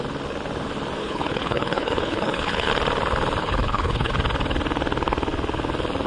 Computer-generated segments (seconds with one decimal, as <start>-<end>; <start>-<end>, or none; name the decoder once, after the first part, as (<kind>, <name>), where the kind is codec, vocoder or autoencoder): 1.0-2.7 (codec, HILCodec); 3.4-4.1